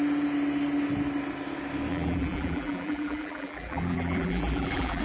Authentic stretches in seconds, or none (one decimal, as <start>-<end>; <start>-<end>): 0.0-1.9